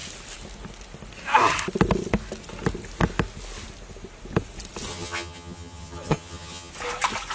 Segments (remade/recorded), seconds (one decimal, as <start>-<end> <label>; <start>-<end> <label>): 0.0-4.9 recorded; 4.9-6.7 remade; 6.7-7.3 recorded